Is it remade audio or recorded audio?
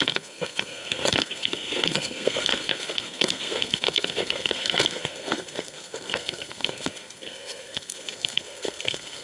remade